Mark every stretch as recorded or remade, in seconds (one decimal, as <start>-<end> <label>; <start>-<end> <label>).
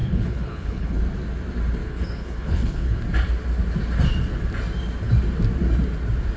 0.0-1.0 remade; 1.0-1.8 recorded; 1.8-3.0 remade; 3.0-6.4 recorded